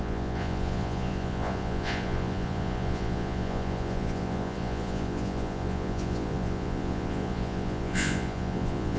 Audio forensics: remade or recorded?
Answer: remade